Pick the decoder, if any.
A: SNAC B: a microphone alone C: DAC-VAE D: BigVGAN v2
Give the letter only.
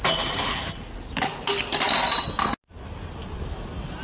B